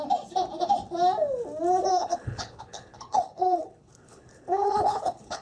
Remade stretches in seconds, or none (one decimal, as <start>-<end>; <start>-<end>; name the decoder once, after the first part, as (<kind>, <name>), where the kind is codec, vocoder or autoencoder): 1.9-5.4 (codec, HILCodec)